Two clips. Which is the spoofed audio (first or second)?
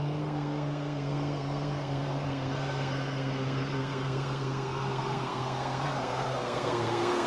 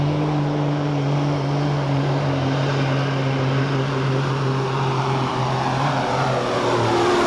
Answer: first